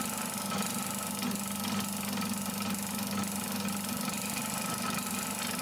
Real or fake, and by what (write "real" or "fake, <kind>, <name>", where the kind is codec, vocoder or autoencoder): real